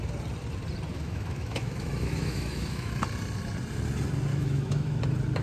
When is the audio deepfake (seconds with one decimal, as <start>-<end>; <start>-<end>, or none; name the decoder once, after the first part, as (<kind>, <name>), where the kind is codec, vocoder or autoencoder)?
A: 0.9-2.9 (autoencoder, DAC-VAE); 4.3-5.0